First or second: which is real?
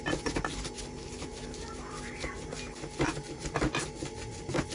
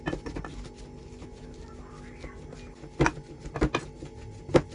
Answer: second